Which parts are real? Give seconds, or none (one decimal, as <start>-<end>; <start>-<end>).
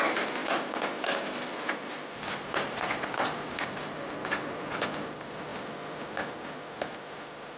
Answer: 0.4-2.9; 5.5-7.0